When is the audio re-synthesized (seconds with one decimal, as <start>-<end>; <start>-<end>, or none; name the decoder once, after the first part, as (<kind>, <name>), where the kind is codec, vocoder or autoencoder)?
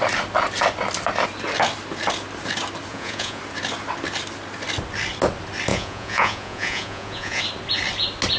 2.9-3.4 (vocoder, Vocos); 5.7-7.4